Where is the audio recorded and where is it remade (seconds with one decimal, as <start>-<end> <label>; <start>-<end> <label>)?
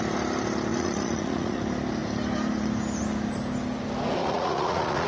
0.0-0.7 recorded; 0.7-1.6 remade; 1.6-4.2 recorded; 4.2-5.1 remade